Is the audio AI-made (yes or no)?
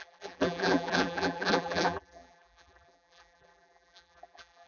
yes